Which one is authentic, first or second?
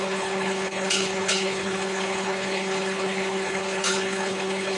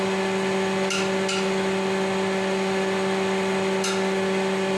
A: second